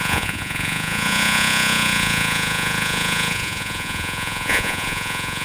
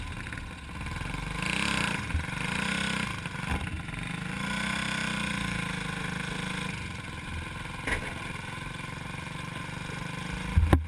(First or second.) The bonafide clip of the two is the second